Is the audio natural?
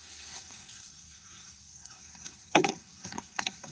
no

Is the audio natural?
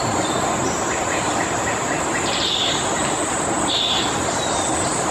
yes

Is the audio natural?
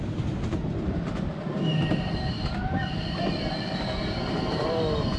yes